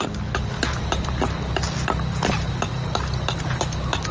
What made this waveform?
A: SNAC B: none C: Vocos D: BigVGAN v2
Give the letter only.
B